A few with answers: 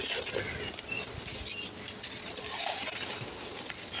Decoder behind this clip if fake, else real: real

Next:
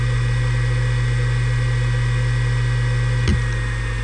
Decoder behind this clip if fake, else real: real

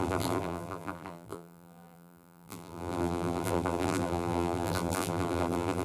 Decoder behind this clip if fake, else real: fake, vocoder, BigVGAN v2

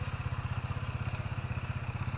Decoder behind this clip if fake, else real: fake, vocoder, BigVGAN v2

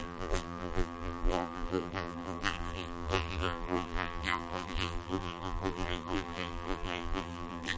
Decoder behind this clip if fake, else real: fake, vocoder, BigVGAN v2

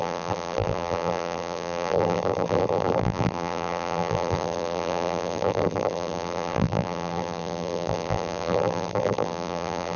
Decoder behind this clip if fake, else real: fake, vocoder, BigVGAN v2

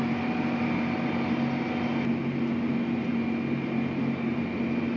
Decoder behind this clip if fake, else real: real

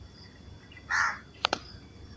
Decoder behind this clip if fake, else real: fake, vocoder, BigVGAN v2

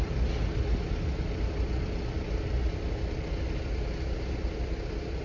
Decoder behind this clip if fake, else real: real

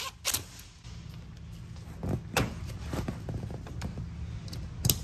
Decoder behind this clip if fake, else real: real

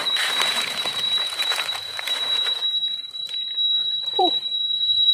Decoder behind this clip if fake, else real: fake, vocoder, BigVGAN v2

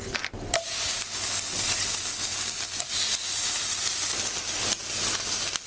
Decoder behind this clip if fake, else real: real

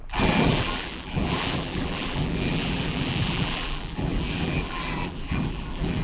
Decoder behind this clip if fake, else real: fake, vocoder, BigVGAN v2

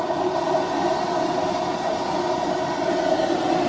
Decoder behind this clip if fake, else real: real